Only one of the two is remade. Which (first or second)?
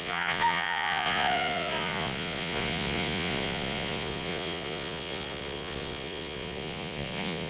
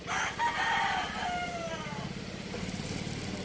first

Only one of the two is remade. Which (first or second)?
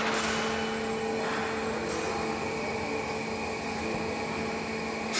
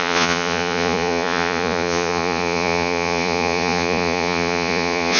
second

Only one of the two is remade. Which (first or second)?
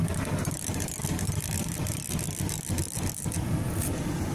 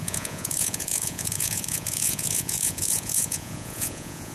second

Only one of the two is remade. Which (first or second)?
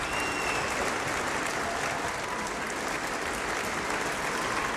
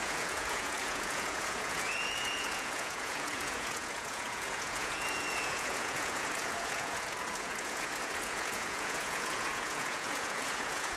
second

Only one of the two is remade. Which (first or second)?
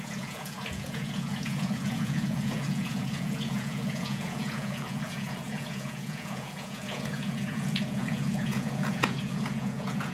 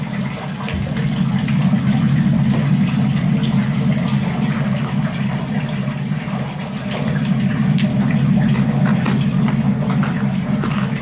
first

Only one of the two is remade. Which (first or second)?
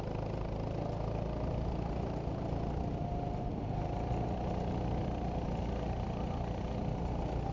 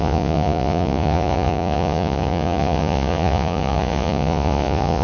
second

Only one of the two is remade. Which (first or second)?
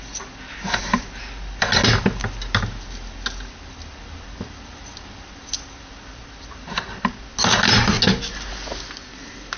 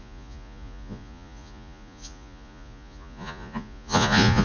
second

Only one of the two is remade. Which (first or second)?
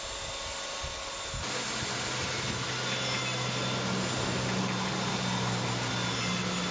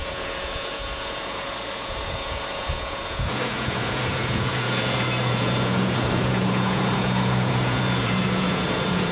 second